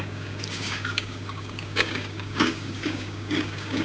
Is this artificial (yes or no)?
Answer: yes